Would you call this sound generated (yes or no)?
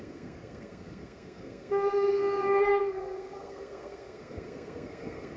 yes